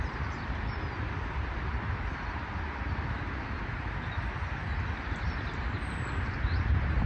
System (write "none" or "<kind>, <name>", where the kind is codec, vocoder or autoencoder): none